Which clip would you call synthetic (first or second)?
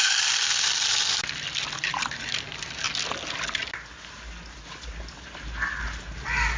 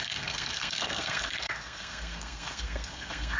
second